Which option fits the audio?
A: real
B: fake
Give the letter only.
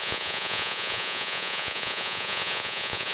B